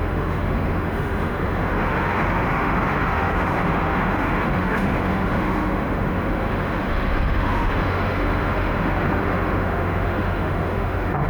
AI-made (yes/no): yes